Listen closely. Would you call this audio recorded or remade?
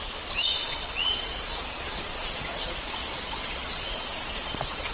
remade